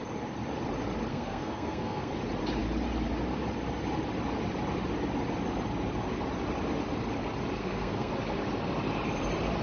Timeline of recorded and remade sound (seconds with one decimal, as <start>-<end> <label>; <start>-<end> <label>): 0.0-1.1 recorded; 1.1-2.1 remade; 2.1-7.6 recorded; 7.6-8.1 remade; 8.1-9.6 recorded